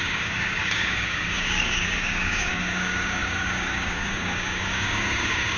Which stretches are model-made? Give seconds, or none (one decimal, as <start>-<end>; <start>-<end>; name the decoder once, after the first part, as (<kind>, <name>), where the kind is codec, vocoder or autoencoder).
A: 0.0-5.6 (codec, DAC)